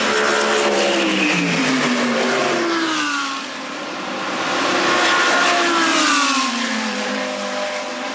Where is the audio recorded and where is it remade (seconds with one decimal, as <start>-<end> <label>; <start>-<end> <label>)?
0.0-1.1 recorded; 1.1-3.4 remade; 3.4-5.9 recorded; 5.9-7.2 remade; 7.2-8.1 recorded